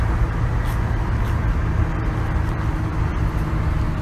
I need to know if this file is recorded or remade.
recorded